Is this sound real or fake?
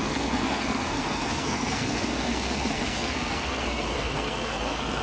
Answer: fake